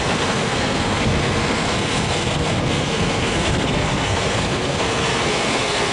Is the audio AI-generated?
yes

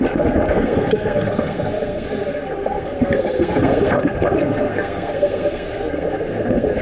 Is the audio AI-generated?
yes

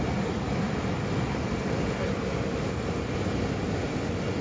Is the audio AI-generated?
no